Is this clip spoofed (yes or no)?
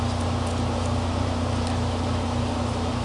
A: no